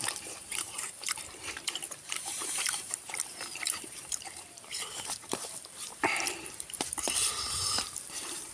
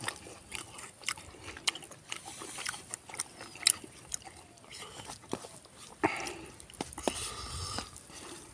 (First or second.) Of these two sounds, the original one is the second